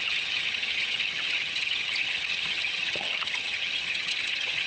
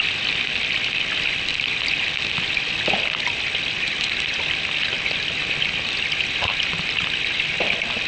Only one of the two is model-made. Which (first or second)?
first